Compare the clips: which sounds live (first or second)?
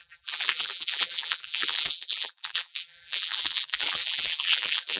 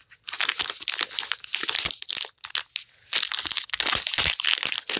second